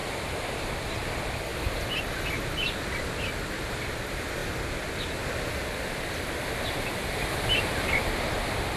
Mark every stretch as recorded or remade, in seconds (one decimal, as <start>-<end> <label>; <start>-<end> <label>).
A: 0.0-1.1 remade; 1.1-1.5 recorded; 1.5-2.0 remade; 2.0-8.8 recorded